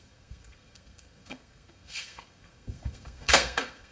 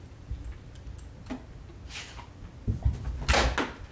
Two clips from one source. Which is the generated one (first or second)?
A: first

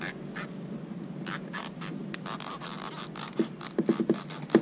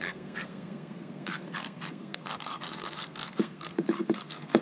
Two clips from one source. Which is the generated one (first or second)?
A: second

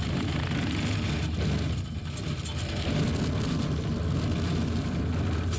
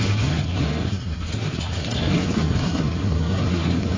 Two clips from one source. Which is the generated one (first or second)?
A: second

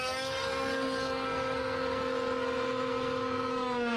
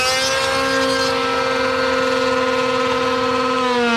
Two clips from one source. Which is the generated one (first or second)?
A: first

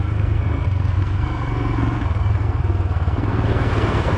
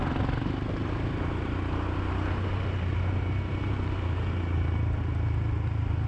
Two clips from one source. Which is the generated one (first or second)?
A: first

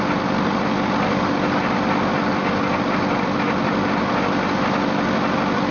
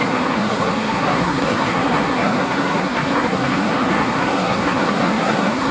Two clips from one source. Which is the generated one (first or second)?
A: second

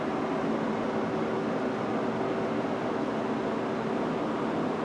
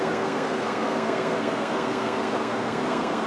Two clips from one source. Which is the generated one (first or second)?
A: second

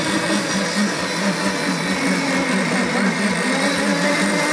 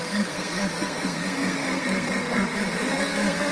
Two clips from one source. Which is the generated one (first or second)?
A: second